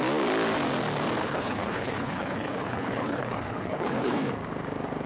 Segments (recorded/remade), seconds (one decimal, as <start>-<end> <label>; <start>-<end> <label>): 0.0-1.2 recorded; 1.2-4.3 remade; 4.3-5.1 recorded